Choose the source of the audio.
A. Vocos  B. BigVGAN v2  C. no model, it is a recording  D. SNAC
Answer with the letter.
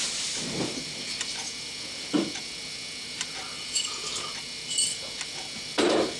C